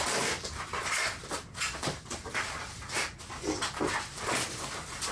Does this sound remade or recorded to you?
recorded